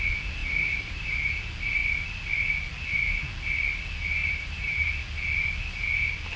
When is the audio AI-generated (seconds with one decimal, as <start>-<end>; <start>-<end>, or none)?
0.4-1.3; 4.2-4.9